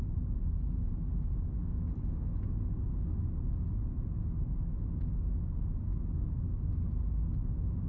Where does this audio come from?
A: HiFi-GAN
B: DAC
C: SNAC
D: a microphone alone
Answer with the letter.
D